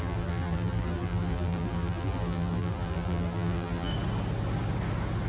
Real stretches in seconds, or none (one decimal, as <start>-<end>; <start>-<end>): 3.9-5.3